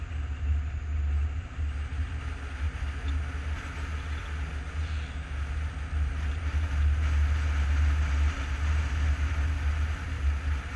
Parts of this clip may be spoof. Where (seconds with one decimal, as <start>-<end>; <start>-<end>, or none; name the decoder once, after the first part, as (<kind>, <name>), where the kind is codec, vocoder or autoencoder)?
none